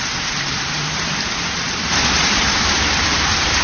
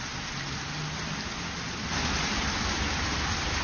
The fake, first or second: first